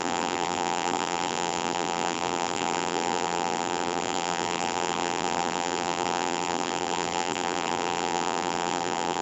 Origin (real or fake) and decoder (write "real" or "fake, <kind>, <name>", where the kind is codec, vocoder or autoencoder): fake, vocoder, BigVGAN v2